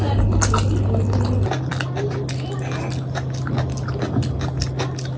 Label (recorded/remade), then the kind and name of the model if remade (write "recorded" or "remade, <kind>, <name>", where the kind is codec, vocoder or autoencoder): recorded